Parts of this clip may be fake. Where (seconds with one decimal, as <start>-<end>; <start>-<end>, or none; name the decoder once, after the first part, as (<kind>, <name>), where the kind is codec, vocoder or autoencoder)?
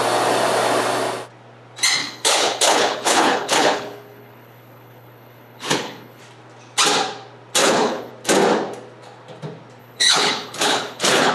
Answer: 2.0-6.2 (codec, HILCodec); 7.6-8.1; 9.8-11.3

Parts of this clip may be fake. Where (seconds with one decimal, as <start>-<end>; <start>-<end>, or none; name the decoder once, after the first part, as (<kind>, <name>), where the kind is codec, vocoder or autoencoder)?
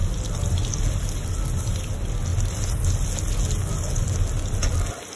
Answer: none